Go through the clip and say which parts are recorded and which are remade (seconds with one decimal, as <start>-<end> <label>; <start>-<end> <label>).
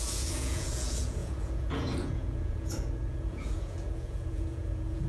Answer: 0.0-5.1 remade